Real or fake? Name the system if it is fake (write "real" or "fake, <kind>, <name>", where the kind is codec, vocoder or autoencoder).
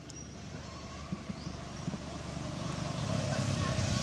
fake, vocoder, BigVGAN v2